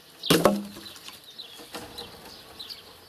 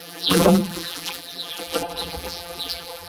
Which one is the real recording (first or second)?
first